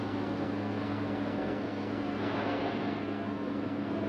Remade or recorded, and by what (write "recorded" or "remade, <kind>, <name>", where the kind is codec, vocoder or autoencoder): remade, codec, SNAC